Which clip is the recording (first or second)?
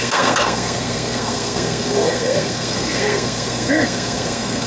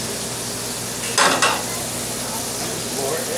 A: second